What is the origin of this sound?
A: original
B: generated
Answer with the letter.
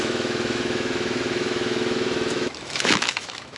B